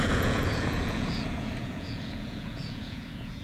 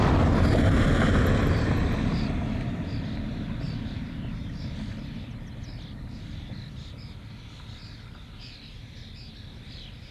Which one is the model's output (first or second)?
first